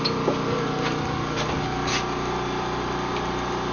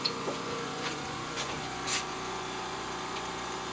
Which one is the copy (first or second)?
second